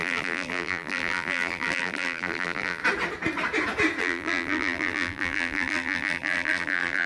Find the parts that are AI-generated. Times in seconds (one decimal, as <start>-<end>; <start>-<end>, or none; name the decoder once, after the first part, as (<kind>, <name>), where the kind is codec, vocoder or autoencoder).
0.0-2.8 (vocoder, BigVGAN v2); 4.0-7.1